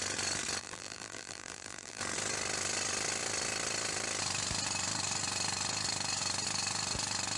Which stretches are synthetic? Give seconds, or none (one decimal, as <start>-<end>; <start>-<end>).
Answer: 0.6-2.0